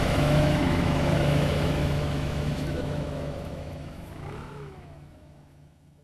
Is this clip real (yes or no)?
no